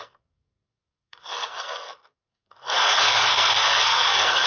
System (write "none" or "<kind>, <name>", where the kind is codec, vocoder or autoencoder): codec, SNAC